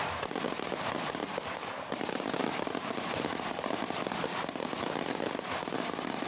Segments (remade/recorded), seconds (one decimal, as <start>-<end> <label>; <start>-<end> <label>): 0.0-1.2 recorded; 1.2-5.0 remade; 5.0-6.3 recorded